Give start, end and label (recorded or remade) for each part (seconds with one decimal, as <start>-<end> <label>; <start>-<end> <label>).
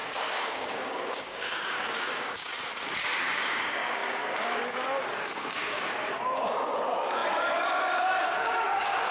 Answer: 0.0-2.5 remade; 2.5-3.3 recorded; 3.3-9.1 remade